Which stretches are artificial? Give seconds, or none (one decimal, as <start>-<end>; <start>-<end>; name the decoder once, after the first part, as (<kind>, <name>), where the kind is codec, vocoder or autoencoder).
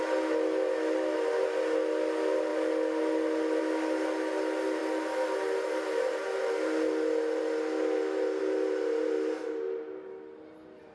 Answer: none